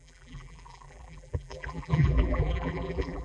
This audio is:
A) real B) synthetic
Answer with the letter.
B